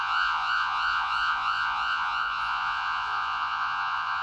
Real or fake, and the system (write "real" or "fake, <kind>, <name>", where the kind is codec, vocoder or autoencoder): fake, vocoder, Vocos